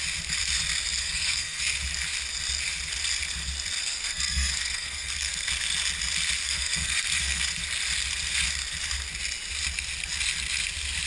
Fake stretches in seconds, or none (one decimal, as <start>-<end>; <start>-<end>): 1.0-1.6; 3.8-5.5; 6.4-7.4